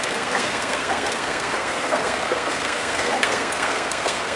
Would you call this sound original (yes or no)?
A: no